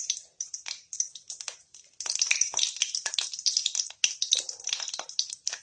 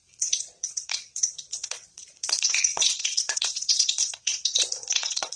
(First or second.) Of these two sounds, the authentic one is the first